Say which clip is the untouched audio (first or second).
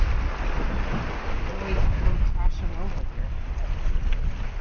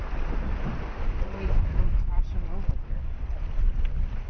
first